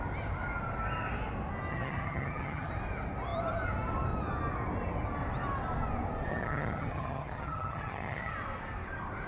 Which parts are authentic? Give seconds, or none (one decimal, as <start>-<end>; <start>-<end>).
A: 0.0-1.7; 2.7-6.3; 8.3-9.3